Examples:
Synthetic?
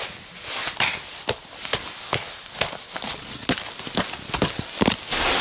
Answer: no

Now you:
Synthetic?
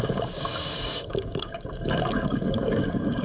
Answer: yes